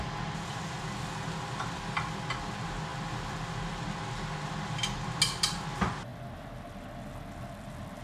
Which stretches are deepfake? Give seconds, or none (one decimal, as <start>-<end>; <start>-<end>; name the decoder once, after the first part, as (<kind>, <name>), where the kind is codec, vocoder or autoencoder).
none